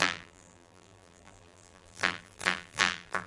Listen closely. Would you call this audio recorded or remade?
remade